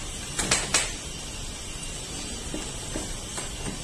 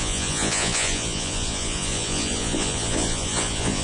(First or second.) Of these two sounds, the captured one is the first